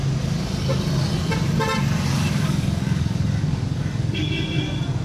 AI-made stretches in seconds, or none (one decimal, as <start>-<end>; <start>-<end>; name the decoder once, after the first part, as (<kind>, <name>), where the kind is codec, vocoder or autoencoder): 2.1-4.3 (codec, DAC)